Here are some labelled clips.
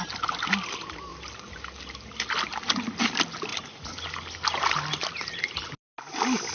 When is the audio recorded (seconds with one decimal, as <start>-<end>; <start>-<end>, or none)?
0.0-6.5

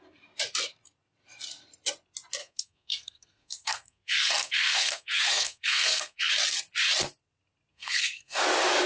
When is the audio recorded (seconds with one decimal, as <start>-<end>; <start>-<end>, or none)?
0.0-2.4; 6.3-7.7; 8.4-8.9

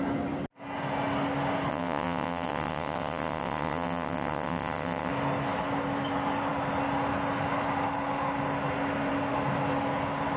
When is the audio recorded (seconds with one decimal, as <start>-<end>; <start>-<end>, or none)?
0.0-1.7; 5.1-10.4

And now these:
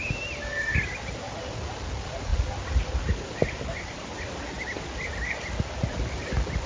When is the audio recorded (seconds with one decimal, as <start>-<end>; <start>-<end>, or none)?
0.0-6.7

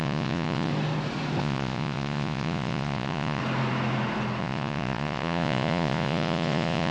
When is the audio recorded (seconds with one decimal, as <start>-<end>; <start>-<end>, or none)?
0.7-1.4; 3.4-4.4

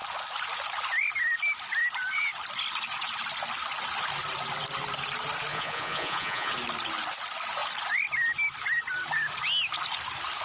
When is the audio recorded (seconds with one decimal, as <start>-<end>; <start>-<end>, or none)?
0.0-5.5; 6.5-10.4

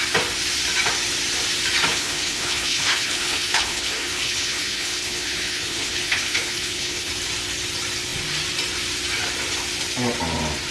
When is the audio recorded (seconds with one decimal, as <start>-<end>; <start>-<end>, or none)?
0.0-1.9; 7.1-10.7